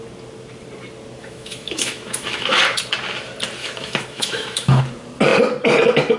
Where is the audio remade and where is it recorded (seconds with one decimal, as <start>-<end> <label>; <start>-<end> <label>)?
0.0-1.2 recorded; 1.2-2.6 remade; 2.6-3.6 recorded; 3.6-4.8 remade; 4.8-6.2 recorded